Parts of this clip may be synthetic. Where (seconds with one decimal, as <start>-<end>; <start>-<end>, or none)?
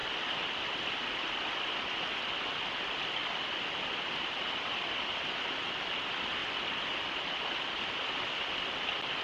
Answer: 3.2-4.5; 6.4-7.1